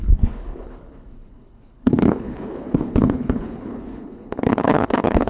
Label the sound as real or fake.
fake